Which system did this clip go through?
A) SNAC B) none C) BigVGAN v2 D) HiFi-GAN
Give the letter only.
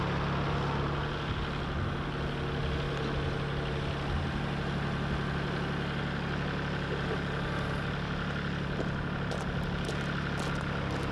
B